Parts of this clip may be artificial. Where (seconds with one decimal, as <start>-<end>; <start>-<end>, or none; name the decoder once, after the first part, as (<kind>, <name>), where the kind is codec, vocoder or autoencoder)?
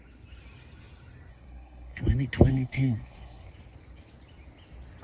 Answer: 1.3-2.0 (codec, SNAC); 2.5-3.5